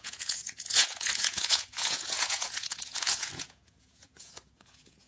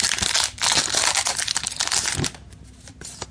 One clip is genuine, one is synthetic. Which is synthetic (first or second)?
first